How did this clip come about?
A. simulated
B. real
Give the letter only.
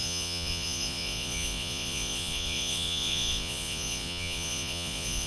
A